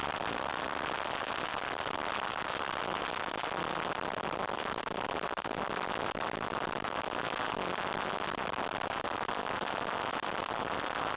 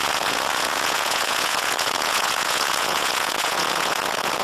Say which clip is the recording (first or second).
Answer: first